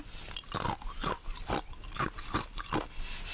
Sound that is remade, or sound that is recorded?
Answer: recorded